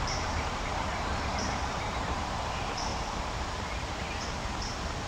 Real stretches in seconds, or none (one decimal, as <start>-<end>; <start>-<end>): 2.9-5.1